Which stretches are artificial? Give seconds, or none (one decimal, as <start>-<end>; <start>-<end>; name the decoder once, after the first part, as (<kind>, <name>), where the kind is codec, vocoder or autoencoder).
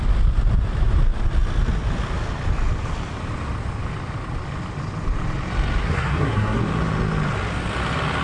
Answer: 5.8-6.6 (codec, SNAC)